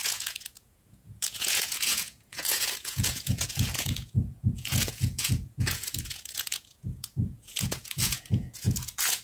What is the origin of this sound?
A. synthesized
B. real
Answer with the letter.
A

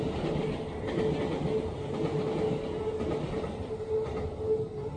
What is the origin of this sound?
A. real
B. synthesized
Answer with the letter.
A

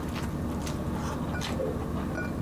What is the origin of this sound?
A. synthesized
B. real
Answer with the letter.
B